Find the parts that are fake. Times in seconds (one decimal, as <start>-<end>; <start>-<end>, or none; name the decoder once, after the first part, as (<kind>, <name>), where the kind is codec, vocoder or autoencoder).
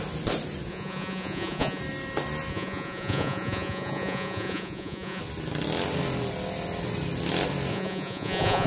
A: 0.7-1.8 (vocoder, Vocos); 2.5-5.2; 7.7-8.7